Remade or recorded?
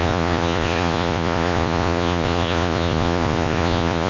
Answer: remade